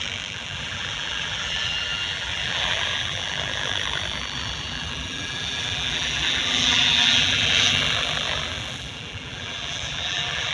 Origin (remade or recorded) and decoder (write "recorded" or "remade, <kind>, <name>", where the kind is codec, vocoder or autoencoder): remade, vocoder, BigVGAN v2